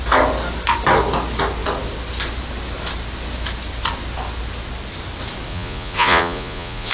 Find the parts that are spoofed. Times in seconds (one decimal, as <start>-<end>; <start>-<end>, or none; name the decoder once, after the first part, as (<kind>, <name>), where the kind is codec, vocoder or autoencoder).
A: 5.5-6.9 (vocoder, Vocos)